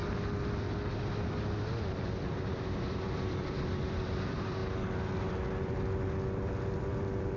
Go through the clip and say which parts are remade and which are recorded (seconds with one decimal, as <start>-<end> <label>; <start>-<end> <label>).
0.0-1.8 recorded; 1.8-4.6 remade; 4.6-5.3 recorded; 5.3-7.4 remade